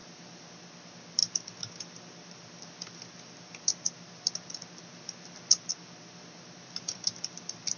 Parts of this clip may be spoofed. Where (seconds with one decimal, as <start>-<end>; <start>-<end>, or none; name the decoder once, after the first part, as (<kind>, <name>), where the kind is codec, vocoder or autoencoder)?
0.0-0.5 (vocoder, BigVGAN v2)